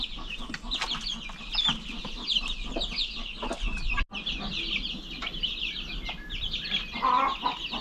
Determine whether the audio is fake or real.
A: real